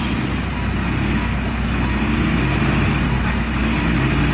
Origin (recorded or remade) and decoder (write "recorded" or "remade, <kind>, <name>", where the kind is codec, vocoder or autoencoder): recorded